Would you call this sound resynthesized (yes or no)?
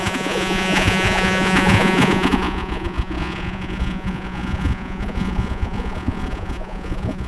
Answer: yes